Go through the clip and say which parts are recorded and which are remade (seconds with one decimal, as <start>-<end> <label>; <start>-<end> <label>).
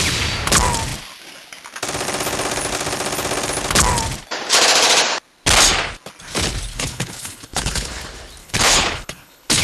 0.0-6.7 recorded; 6.7-8.0 remade; 8.0-8.4 recorded; 8.4-9.6 remade